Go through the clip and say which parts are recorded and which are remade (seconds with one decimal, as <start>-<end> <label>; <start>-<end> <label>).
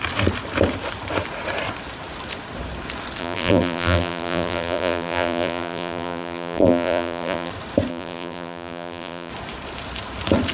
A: 0.0-3.2 recorded; 3.2-7.5 remade; 7.5-7.9 recorded; 7.9-9.3 remade; 9.3-10.5 recorded